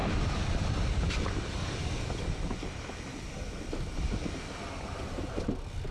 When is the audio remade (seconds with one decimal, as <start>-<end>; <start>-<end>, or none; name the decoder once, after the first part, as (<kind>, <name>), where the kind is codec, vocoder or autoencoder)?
0.0-2.9 (vocoder, BigVGAN v2)